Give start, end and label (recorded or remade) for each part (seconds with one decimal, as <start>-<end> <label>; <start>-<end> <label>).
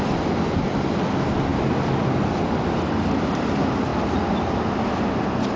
0.0-5.6 recorded